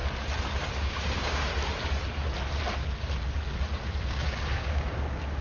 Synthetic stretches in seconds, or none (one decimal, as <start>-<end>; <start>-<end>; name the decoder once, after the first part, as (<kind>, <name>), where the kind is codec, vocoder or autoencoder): 0.8-1.5 (codec, DAC); 4.0-5.4